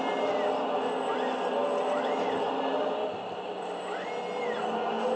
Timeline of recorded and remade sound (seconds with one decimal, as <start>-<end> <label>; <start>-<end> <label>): 0.0-3.0 recorded; 3.0-3.8 remade; 3.8-5.2 recorded